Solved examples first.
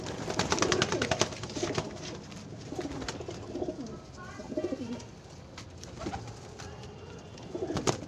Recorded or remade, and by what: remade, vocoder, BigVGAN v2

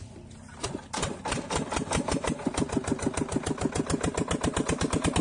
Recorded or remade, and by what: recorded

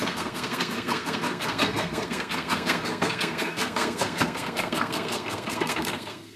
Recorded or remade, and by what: remade, codec, SNAC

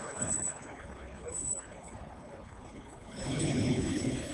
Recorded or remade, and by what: remade, codec, HILCodec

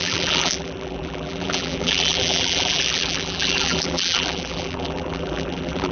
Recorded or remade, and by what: remade, vocoder, BigVGAN v2